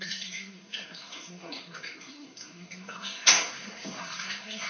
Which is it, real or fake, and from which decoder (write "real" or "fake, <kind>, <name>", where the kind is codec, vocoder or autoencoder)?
fake, codec, SNAC